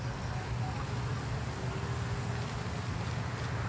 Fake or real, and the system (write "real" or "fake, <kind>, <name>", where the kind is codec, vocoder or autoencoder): real